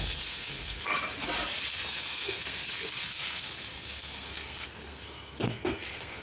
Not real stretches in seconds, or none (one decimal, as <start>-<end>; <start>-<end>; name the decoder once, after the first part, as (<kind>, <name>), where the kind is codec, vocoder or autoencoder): 0.0-0.9 (codec, SNAC); 1.7-6.2